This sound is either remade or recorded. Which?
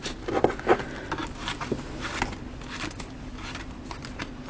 recorded